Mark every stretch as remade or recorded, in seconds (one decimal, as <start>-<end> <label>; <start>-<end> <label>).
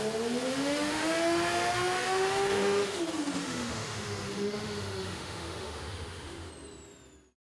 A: 0.0-0.5 recorded; 0.5-3.0 remade; 3.0-3.4 recorded; 3.4-6.5 remade; 6.5-7.5 recorded